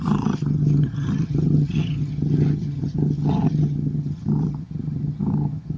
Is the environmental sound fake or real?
fake